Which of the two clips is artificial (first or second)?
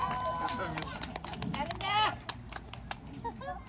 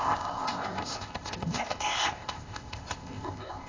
second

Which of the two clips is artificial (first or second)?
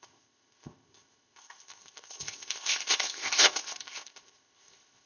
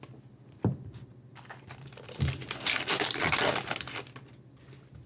first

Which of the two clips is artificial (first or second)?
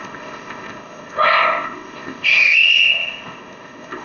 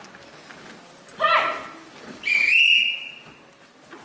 first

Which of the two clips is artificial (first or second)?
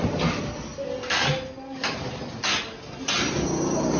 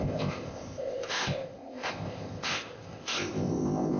second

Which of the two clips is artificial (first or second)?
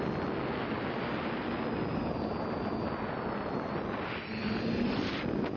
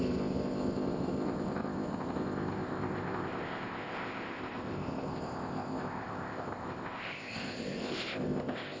second